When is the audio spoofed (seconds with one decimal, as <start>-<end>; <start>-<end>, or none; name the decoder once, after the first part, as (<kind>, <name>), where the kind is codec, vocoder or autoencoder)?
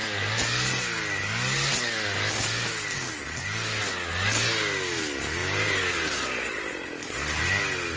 5.4-6.7 (vocoder, BigVGAN v2)